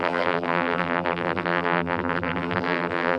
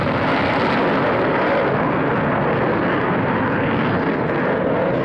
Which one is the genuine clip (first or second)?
second